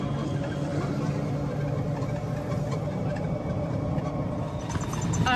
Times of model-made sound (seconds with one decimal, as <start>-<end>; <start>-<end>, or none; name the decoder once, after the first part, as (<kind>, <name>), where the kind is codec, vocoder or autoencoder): none